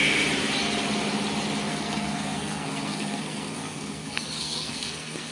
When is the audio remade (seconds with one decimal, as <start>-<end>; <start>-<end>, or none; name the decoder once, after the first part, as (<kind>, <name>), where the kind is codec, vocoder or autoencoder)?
1.7-5.3 (codec, SNAC)